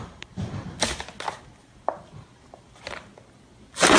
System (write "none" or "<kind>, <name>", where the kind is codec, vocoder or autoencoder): none